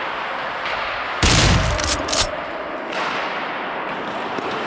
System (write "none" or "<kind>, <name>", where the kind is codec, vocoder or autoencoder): vocoder, BigVGAN v2